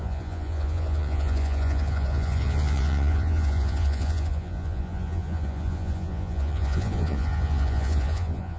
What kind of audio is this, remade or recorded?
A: remade